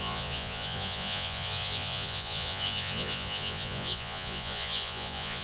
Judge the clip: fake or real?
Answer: fake